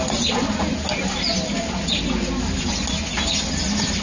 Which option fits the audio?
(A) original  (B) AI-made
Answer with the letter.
A